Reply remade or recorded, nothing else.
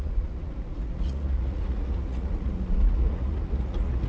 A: remade